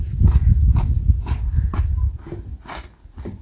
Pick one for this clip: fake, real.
real